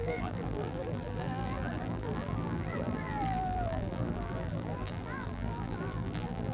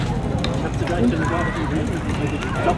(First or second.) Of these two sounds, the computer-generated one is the first